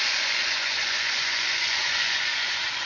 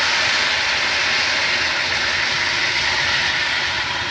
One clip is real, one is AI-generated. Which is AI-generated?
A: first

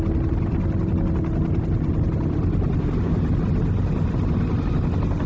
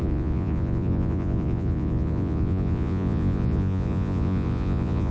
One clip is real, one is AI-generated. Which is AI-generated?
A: second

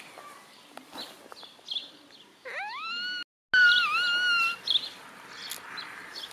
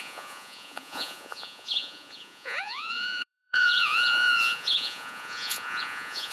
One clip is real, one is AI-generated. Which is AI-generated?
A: second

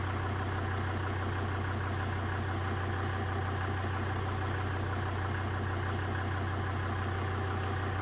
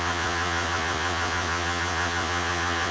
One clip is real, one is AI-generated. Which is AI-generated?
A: second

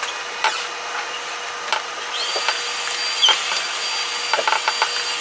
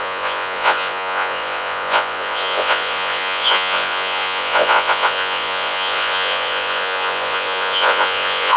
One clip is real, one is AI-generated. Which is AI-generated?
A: second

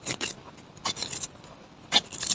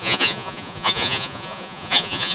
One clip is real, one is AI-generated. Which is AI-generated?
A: second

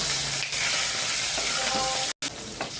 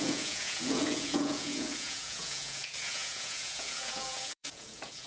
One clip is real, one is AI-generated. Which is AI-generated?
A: second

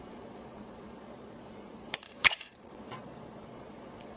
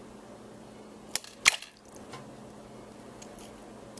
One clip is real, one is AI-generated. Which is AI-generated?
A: first